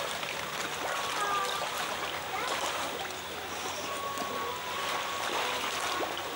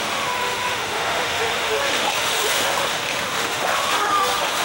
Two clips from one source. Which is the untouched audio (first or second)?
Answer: first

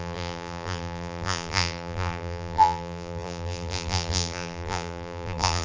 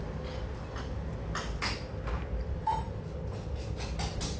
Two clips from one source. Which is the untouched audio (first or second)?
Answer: second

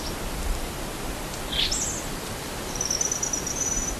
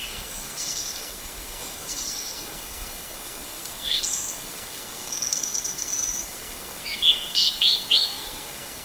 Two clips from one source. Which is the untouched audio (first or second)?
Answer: first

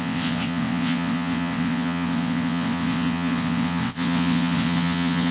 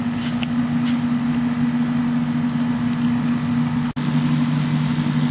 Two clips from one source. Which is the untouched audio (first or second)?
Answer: second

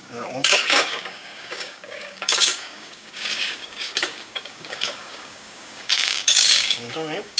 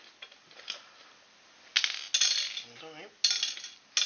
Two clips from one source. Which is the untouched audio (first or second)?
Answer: second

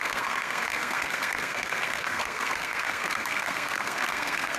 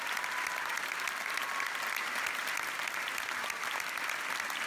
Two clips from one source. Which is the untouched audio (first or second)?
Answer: second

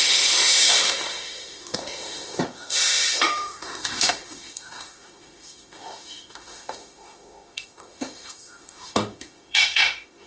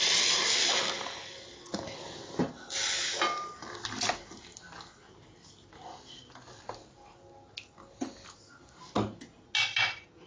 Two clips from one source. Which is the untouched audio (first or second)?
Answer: second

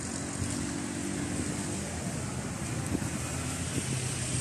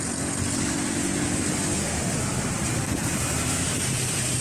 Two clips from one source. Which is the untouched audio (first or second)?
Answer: first